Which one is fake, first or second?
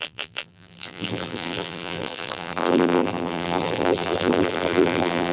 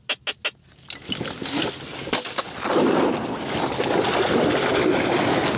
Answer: first